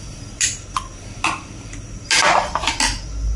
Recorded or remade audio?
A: recorded